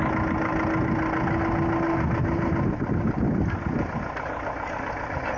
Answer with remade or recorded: recorded